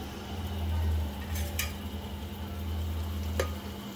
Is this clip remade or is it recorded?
recorded